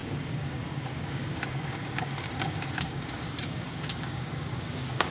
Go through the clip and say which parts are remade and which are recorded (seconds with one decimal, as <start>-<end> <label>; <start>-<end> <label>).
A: 0.0-5.1 remade